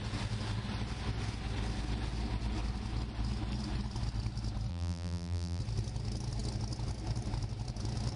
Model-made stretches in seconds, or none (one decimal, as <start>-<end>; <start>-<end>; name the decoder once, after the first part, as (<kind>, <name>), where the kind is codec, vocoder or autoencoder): 4.7-5.6 (vocoder, BigVGAN v2)